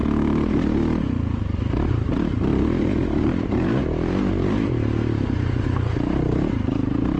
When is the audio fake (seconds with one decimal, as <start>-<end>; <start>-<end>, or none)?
1.9-2.5; 3.2-7.2